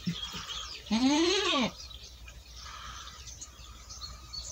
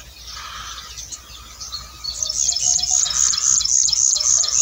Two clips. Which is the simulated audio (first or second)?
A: first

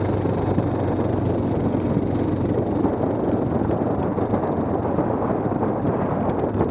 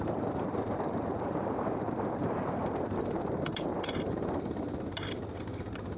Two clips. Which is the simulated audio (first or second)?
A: second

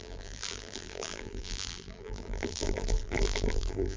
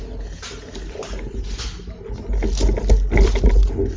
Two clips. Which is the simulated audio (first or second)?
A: first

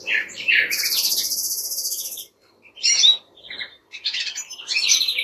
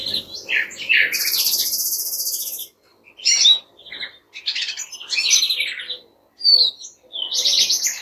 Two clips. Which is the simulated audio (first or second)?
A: first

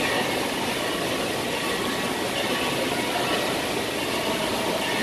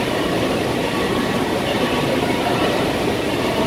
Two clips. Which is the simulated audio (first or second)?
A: second